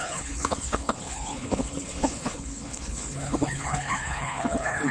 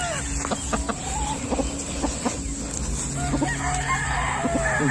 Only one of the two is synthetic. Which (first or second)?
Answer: first